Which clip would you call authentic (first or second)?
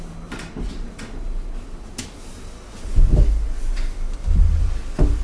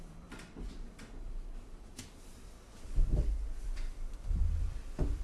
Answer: first